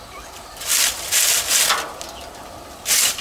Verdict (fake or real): fake